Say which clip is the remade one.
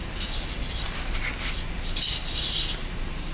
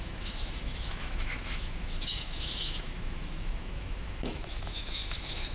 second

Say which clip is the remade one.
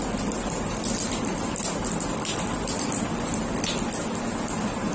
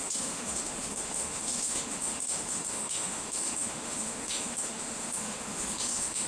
second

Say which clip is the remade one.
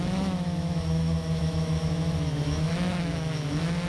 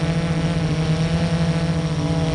first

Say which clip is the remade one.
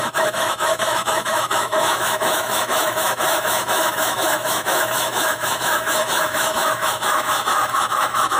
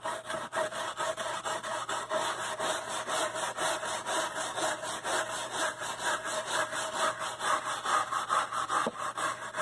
first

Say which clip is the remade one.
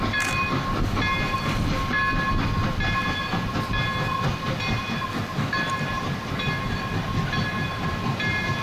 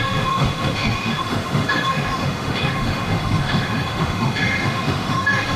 second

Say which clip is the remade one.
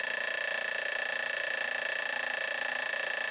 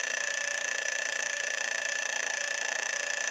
second